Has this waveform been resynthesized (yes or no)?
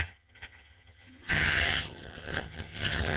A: yes